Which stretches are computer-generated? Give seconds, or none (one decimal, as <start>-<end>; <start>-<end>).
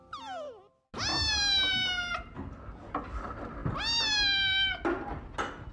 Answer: none